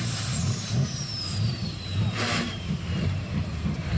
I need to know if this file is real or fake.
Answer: fake